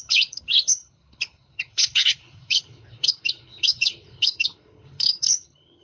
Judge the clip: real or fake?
fake